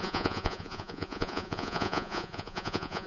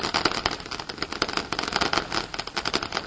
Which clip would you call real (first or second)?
second